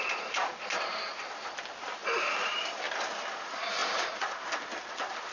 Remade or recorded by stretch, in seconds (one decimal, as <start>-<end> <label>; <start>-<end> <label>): 0.0-3.8 recorded; 3.8-4.5 remade; 4.5-5.3 recorded